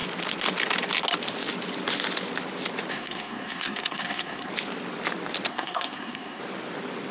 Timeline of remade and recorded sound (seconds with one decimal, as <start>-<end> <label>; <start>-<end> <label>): 0.0-2.9 recorded; 2.9-4.5 remade; 4.5-5.5 recorded; 5.5-6.4 remade; 6.4-7.1 recorded